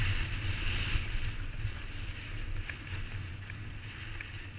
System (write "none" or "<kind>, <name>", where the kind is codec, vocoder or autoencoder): none